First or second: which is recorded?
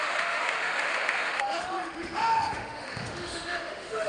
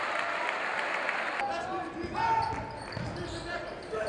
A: second